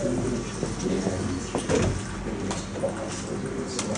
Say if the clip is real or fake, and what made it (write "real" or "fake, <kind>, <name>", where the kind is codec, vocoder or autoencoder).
real